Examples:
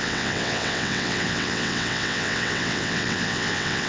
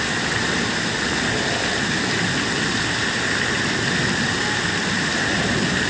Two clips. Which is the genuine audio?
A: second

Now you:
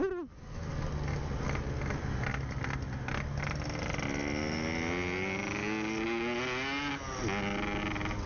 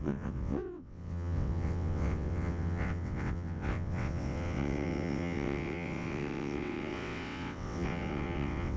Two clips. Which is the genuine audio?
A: first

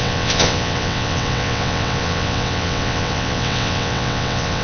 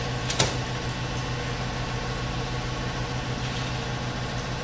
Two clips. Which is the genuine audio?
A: second